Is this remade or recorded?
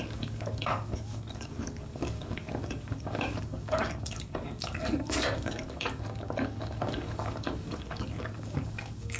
remade